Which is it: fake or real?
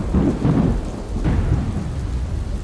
real